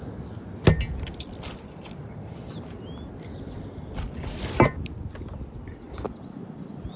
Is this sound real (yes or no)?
yes